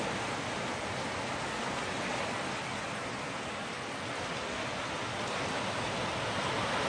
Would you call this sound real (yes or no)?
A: yes